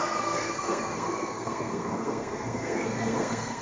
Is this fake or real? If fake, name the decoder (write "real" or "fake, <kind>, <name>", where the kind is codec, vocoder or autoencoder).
fake, codec, SNAC